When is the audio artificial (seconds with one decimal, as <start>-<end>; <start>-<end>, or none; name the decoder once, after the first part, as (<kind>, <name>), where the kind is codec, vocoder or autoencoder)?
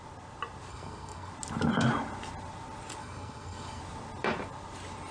0.7-1.3 (codec, SNAC); 3.0-3.8